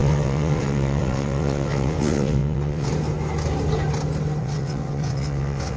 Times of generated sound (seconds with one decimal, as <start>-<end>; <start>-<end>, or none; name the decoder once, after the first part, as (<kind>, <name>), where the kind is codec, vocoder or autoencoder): 0.0-2.9 (vocoder, WaveNeXt); 4.4-5.8